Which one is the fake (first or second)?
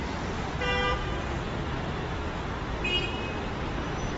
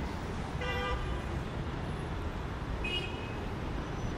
second